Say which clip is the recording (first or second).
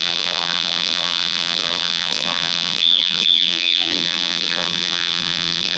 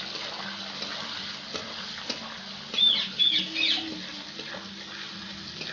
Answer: second